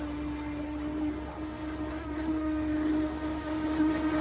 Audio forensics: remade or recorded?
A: recorded